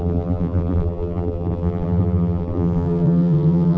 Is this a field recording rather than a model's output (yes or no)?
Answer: no